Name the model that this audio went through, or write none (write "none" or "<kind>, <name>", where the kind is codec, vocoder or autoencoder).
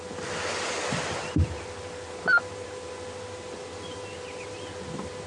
none